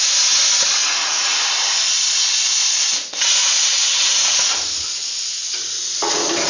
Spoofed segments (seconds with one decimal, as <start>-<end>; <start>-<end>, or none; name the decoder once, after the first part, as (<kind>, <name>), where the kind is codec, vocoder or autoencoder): 0.8-1.4 (vocoder, Vocos); 3.4-4.5; 5.0-5.6